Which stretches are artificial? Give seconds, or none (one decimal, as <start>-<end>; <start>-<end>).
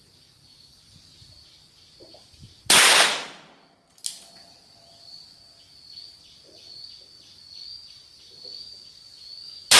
none